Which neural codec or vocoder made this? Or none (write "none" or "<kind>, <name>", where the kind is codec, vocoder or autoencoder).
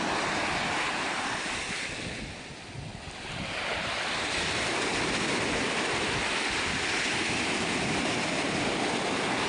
none